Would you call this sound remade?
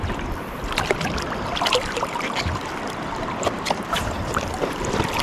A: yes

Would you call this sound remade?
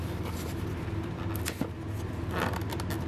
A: no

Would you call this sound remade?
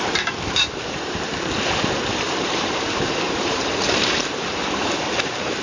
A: yes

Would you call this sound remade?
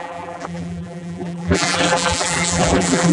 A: yes